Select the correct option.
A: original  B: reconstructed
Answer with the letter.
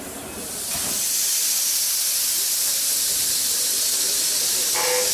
A